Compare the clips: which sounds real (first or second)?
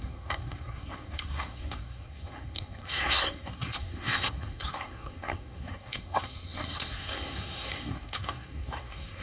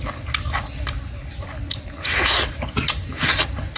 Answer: second